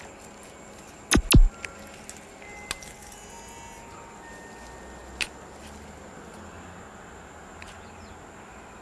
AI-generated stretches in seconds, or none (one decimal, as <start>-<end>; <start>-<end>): none